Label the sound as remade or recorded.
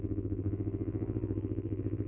remade